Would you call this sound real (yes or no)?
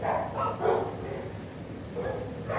yes